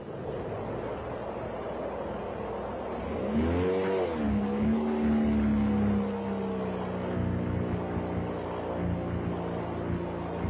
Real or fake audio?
real